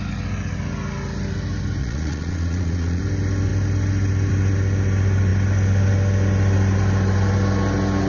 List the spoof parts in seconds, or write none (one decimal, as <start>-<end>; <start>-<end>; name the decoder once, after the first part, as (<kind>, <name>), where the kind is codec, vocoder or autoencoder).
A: 1.8-3.0 (vocoder, Vocos)